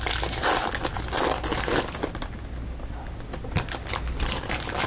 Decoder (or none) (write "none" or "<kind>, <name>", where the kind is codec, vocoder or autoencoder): none